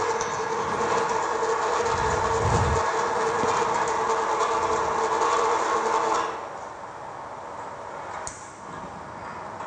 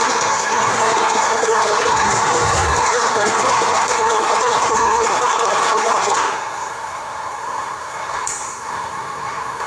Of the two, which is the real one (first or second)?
first